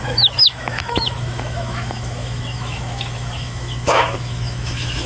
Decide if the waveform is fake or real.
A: fake